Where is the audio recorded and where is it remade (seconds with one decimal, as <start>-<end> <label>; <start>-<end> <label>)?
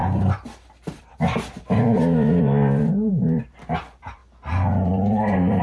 0.0-4.2 remade; 4.2-4.8 recorded; 4.8-5.6 remade